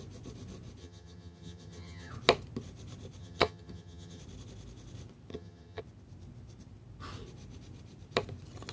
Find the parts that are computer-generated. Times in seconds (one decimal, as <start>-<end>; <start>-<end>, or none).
0.8-2.1; 3.2-4.2; 5.3-5.8